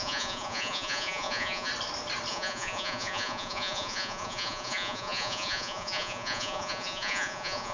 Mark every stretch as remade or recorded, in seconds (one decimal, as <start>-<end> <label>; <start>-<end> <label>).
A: 0.0-1.7 remade; 1.7-2.3 recorded; 2.3-7.7 remade